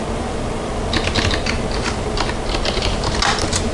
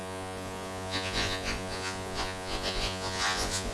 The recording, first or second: first